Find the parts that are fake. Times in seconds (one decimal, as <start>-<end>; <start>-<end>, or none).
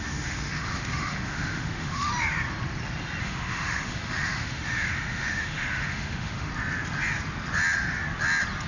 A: 0.0-2.1; 3.2-6.5